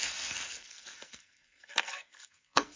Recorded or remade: remade